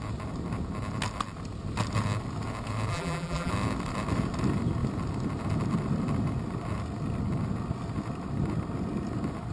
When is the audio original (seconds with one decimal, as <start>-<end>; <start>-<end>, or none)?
0.0-2.9; 3.5-9.5